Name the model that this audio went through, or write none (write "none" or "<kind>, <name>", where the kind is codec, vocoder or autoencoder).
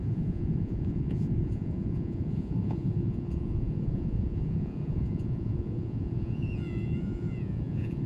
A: vocoder, Vocos